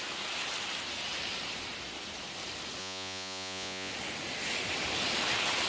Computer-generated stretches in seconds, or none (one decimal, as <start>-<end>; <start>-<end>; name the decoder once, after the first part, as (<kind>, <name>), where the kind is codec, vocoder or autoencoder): 2.8-3.9 (vocoder, Vocos)